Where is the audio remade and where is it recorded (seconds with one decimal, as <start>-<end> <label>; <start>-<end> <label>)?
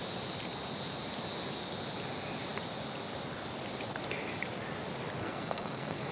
0.0-5.2 recorded; 5.2-6.1 remade